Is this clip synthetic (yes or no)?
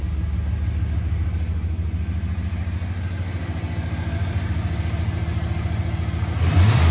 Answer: no